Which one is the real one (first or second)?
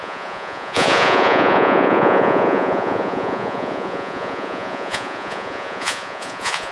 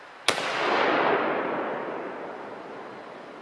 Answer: second